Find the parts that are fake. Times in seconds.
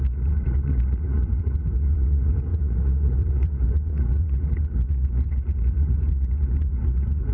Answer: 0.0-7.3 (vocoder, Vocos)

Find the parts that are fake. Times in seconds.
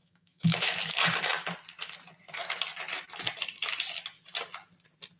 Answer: 0.0-0.8 (autoencoder, DAC-VAE)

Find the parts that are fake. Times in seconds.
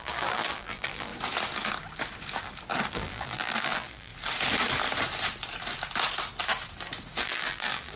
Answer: 0.0-1.1 (vocoder, BigVGAN v2); 2.9-4.1; 7.2-8.0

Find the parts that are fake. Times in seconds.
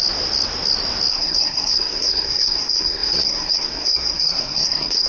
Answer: 1.1-5.1 (codec, SNAC)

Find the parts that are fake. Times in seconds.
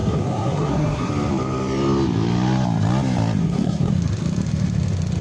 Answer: 0.0-1.1 (codec, SNAC); 3.4-3.9